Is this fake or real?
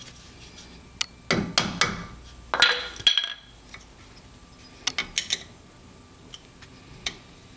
real